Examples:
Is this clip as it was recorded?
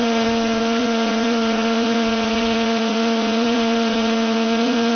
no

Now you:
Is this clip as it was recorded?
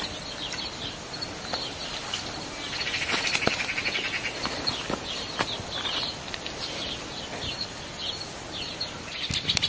yes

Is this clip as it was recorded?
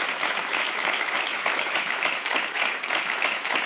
no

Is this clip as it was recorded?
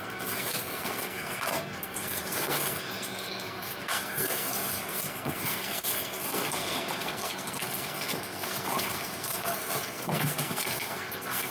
no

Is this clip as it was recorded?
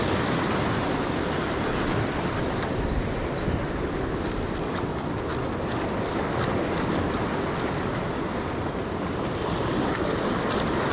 yes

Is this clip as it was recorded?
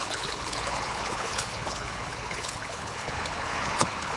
no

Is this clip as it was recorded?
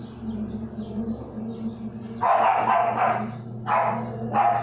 yes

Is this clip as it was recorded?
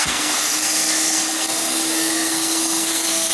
no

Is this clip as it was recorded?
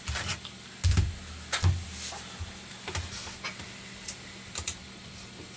yes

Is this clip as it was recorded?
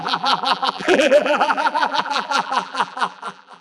no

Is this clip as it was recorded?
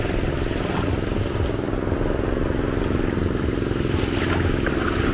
yes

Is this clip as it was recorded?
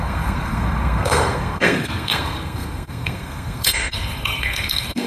no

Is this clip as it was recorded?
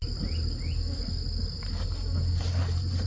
yes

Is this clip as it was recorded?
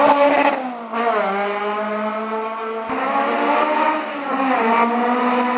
yes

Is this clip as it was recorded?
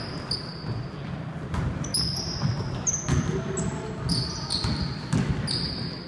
yes